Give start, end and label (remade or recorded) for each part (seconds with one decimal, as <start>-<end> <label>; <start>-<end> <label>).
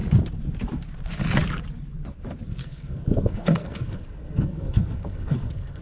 0.0-2.6 recorded; 2.6-5.8 remade